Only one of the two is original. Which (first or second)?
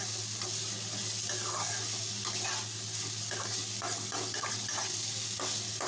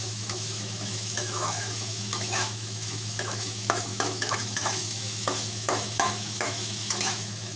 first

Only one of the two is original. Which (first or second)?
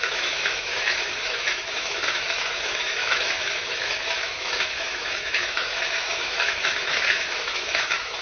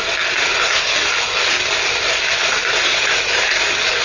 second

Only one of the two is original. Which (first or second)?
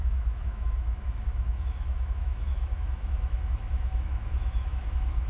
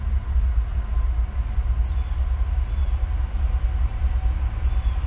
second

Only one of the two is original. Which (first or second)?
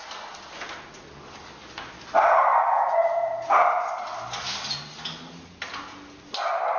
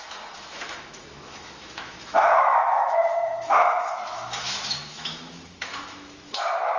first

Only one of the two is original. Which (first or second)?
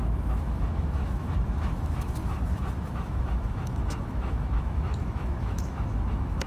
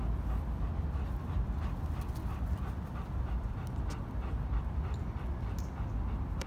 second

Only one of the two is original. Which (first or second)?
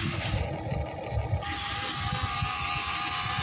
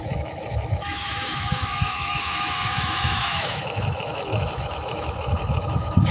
first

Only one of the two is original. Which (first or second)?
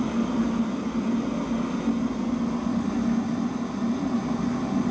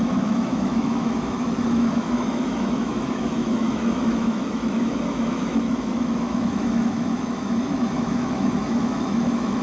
first